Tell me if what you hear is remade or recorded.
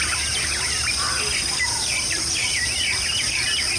remade